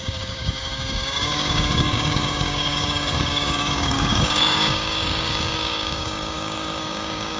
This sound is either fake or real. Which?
fake